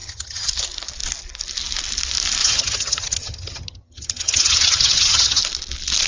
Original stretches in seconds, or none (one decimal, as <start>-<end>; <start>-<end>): 0.5-2.4; 5.4-6.1